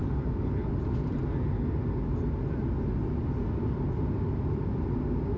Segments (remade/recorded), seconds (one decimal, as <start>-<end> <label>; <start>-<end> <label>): 0.0-5.4 recorded